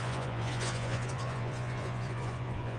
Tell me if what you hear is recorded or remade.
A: remade